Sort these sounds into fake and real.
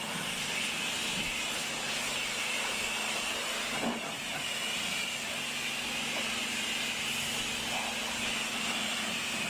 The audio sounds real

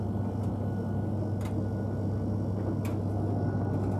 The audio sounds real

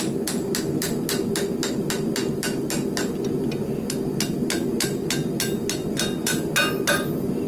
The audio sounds real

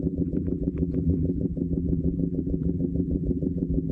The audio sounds fake